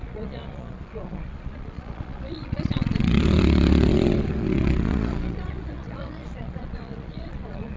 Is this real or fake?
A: fake